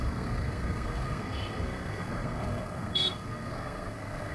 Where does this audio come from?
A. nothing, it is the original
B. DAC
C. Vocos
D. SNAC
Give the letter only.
D